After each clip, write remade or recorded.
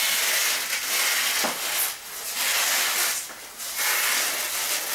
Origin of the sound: recorded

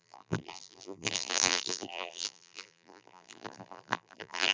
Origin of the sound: remade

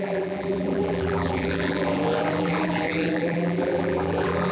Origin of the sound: remade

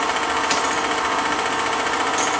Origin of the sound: recorded